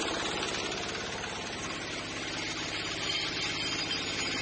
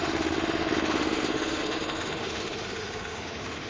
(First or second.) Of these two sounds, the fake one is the second